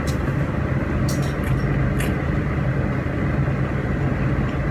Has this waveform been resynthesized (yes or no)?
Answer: no